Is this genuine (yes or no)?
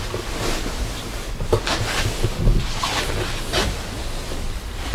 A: yes